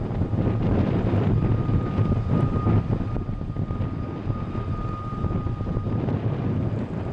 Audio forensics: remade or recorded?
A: recorded